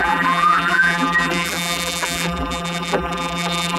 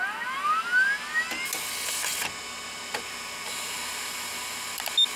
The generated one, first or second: first